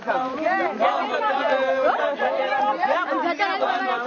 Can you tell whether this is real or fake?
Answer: real